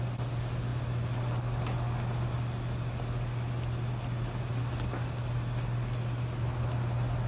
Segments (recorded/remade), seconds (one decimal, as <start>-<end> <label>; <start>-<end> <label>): 0.0-7.3 recorded